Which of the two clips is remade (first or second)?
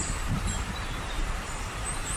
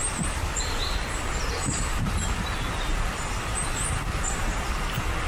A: first